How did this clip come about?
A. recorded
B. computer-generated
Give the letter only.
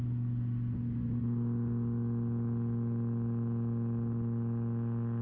A